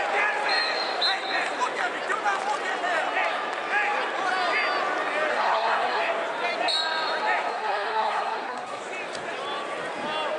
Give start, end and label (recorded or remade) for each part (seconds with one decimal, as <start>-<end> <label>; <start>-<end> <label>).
0.0-5.3 recorded; 5.3-6.0 remade; 6.0-7.5 recorded; 7.5-8.8 remade; 8.8-10.4 recorded